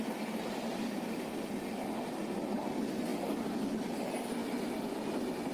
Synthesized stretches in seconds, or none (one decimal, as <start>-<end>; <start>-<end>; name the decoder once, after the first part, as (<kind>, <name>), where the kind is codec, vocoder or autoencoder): none